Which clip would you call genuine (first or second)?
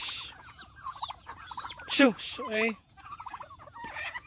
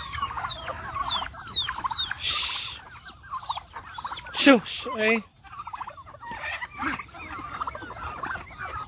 second